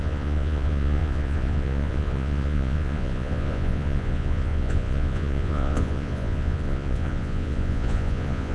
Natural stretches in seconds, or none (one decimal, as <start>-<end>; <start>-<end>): none